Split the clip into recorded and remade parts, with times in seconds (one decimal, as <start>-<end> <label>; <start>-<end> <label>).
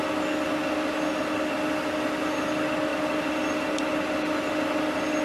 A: 0.0-5.2 recorded